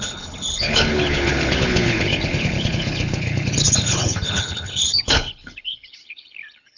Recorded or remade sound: remade